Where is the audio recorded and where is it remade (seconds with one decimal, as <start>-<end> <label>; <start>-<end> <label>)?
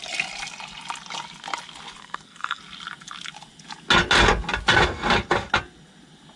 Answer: 0.0-2.0 recorded; 2.0-2.6 remade; 2.6-6.4 recorded